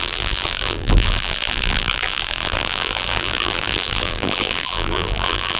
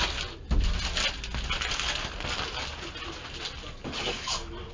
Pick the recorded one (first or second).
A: second